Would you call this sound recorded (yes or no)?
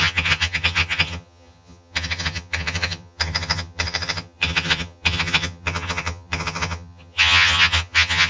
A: no